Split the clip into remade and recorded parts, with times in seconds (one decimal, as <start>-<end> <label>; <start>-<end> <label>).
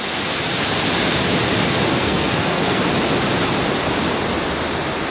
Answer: 0.0-1.9 recorded; 1.9-2.8 remade; 2.8-5.1 recorded